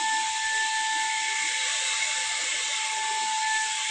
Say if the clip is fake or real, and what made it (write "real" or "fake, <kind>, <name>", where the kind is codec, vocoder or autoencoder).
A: real